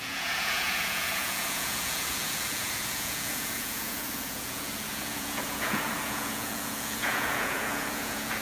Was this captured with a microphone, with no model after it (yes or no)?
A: no